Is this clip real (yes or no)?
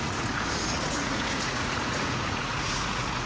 no